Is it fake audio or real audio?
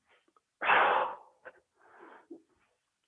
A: real